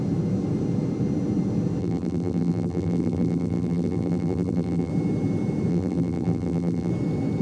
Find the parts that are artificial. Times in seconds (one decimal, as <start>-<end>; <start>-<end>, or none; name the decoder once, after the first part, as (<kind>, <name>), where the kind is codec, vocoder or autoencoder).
1.8-4.9 (vocoder, BigVGAN v2); 5.7-6.9

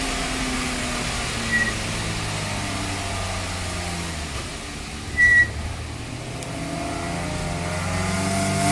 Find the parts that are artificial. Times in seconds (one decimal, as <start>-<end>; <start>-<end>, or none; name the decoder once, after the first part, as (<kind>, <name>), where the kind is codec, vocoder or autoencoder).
none

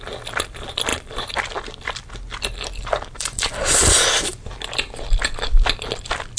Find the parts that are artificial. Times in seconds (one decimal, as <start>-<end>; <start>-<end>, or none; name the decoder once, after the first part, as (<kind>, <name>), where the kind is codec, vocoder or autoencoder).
0.0-4.3 (vocoder, BigVGAN v2); 5.2-6.4

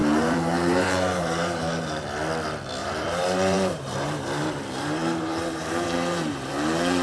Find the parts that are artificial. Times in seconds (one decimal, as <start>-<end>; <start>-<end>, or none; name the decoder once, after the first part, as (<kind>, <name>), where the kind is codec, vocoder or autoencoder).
0.0-2.0 (vocoder, BigVGAN v2); 2.8-6.5

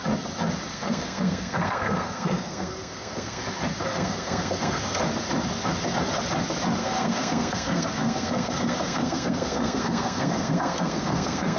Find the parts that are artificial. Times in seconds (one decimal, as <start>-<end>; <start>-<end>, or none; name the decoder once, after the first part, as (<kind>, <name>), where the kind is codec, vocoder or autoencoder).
0.7-3.4 (codec, SNAC); 3.9-5.0; 6.8-11.6